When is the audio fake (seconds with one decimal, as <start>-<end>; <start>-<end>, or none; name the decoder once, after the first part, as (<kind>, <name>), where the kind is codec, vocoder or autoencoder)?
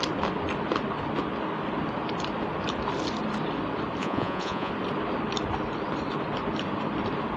4.0-4.7 (vocoder, Vocos)